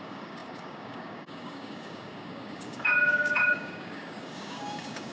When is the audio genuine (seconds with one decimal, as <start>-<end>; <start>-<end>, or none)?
none